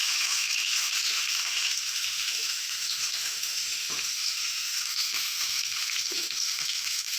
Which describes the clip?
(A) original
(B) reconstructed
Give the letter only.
B